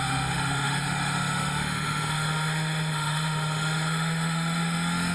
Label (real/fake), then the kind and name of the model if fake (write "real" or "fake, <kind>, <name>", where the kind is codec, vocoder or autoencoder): fake, autoencoder, DAC-VAE